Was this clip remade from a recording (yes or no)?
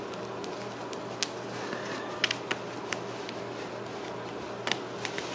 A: no